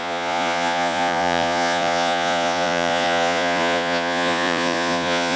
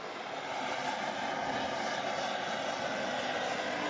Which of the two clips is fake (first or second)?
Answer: first